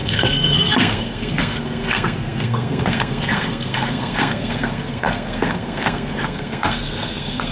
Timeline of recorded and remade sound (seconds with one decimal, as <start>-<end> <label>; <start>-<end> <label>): 0.0-7.5 remade